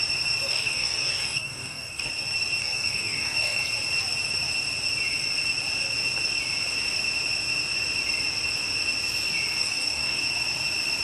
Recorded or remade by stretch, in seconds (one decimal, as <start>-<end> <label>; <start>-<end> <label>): 0.0-0.5 recorded; 0.5-2.1 remade; 2.1-2.6 recorded; 2.6-3.6 remade; 3.6-9.6 recorded; 9.6-10.2 remade; 10.2-11.0 recorded